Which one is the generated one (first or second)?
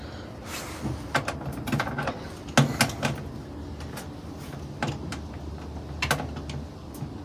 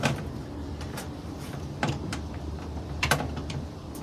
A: second